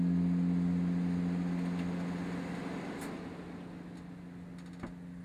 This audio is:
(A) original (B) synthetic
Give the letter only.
A